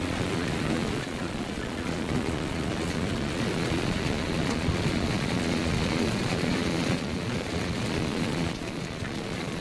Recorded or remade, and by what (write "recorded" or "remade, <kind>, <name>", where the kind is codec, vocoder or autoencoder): remade, vocoder, Vocos